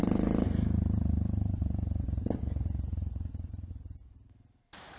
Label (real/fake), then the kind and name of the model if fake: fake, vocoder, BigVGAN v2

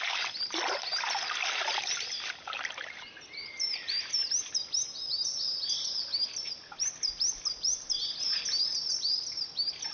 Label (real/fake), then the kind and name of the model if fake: real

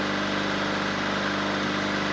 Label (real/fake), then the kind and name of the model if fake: real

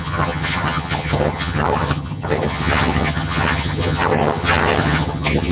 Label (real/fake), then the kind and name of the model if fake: fake, vocoder, HiFi-GAN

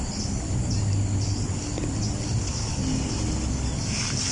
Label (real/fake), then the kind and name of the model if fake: real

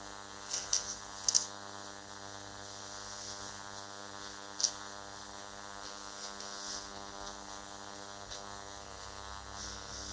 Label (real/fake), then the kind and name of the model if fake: fake, codec, SNAC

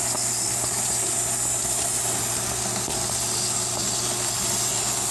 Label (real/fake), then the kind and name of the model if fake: real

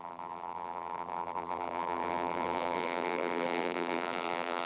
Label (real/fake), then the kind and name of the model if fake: fake, vocoder, BigVGAN v2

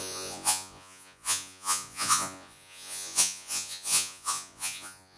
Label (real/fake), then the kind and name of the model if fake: fake, vocoder, Vocos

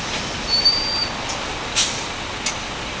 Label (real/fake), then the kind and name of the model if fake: real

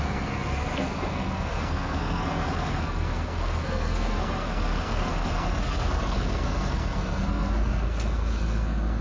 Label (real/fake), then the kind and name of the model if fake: fake, codec, SNAC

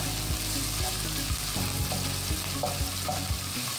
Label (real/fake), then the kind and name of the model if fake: real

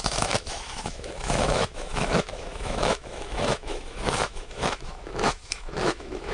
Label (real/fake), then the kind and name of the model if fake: fake, autoencoder, DAC-VAE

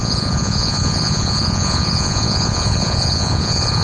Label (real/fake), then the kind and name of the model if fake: fake, vocoder, Vocos